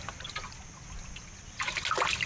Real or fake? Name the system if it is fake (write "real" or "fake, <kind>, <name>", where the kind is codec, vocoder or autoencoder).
real